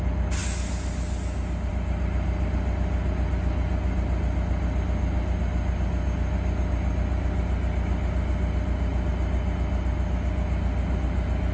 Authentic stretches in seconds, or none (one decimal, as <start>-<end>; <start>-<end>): 0.0-11.5